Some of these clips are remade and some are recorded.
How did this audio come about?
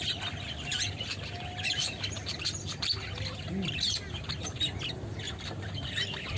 recorded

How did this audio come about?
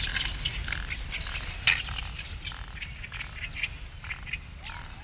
recorded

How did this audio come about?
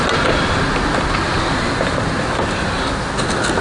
recorded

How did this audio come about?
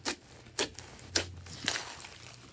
recorded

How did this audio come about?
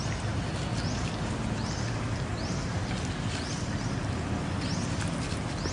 recorded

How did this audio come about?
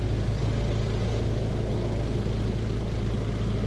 recorded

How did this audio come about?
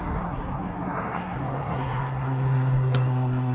remade